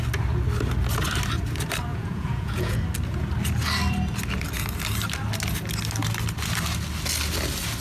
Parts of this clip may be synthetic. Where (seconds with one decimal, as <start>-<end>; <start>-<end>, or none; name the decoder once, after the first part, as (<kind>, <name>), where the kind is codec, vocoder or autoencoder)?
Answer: 1.9-2.8 (vocoder, Vocos)